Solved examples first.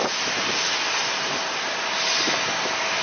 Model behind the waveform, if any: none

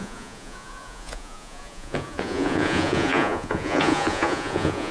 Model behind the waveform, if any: vocoder, Vocos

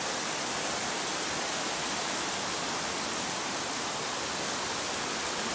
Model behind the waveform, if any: none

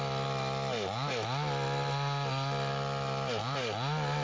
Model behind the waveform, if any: none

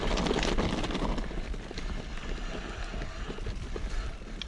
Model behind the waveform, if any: none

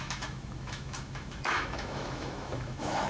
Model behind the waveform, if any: autoencoder, DAC-VAE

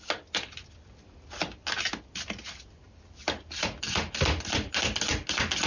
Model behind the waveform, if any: none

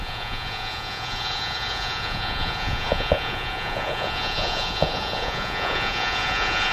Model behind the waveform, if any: vocoder, Vocos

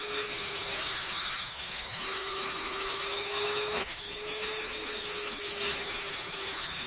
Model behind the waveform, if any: autoencoder, DAC-VAE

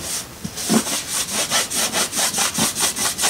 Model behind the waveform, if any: none